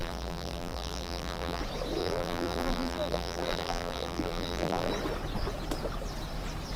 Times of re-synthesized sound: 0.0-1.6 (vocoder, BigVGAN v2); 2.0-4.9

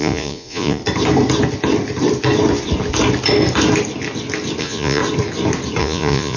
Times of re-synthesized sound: 0.0-0.8 (vocoder, Vocos); 4.6-5.0; 5.8-6.4

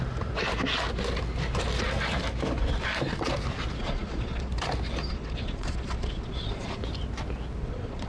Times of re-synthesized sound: 3.8-4.5 (vocoder, Vocos); 5.1-6.8; 7.6-8.1

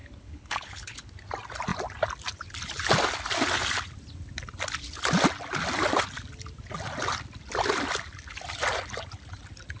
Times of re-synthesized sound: 0.0-1.1 (codec, HILCodec)

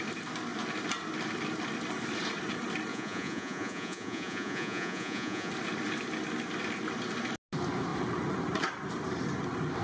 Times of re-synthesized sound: 2.9-5.5 (vocoder, Vocos)

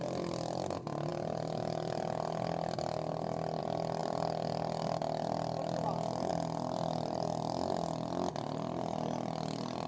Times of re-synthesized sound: none

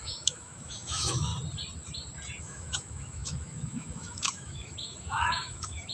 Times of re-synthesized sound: 0.0-1.3 (autoencoder, DAC-VAE); 2.4-5.9

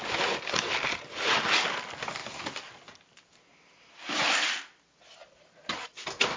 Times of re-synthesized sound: none